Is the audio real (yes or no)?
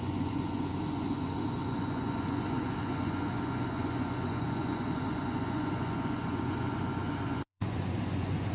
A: no